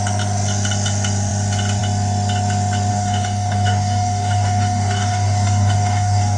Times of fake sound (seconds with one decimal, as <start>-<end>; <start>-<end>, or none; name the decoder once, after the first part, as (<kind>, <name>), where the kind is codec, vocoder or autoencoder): 2.9-6.4 (codec, DAC)

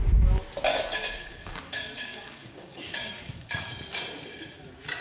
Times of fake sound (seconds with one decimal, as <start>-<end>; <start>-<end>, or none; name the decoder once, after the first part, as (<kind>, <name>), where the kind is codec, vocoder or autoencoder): 0.7-3.7 (codec, DAC)

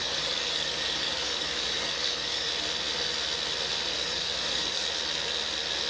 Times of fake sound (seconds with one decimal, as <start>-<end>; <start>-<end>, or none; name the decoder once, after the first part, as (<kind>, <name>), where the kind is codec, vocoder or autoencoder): 0.0-2.5 (codec, DAC); 3.9-4.9

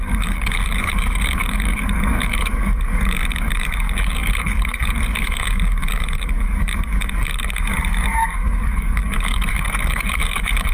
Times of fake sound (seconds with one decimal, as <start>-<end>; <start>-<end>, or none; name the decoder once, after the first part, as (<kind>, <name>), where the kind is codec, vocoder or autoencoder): 0.0-10.7 (codec, DAC)

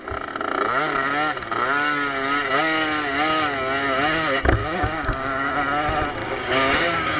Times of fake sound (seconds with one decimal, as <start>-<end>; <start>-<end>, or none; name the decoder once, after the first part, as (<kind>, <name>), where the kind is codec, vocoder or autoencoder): 4.6-5.5 (codec, DAC); 6.2-7.2

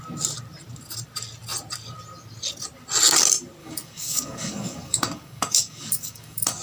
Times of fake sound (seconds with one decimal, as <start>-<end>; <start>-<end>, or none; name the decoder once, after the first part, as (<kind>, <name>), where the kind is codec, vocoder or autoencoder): 3.6-6.6 (codec, DAC)

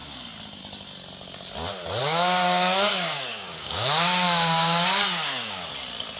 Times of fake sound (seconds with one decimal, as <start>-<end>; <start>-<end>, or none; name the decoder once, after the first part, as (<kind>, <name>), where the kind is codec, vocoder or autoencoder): 2.0-5.7 (codec, DAC)

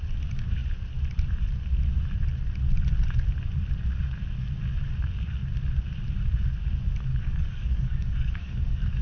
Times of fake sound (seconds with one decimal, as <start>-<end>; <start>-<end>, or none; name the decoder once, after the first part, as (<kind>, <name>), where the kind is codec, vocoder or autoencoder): 7.1-9.0 (codec, DAC)